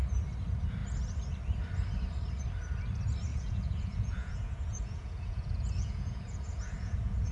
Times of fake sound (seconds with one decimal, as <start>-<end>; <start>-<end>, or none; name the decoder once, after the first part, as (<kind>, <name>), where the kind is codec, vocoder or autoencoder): 3.3-7.3 (vocoder, Vocos)